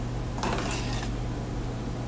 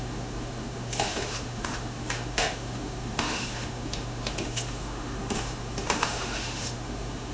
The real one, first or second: first